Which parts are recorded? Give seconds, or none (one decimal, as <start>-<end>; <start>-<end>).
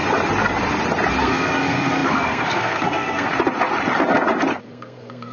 0.0-1.2; 3.3-4.6